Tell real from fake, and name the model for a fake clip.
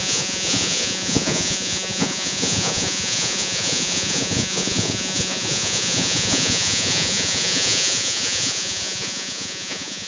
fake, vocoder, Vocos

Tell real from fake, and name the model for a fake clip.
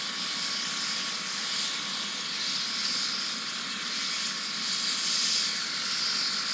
real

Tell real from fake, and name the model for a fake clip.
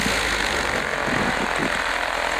real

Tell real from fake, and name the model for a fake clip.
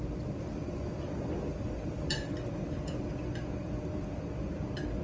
real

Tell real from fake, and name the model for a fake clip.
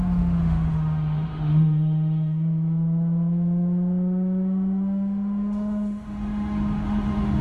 fake, autoencoder, DAC-VAE